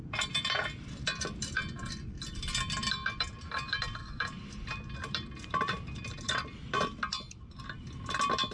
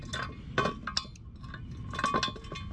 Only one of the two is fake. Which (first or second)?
first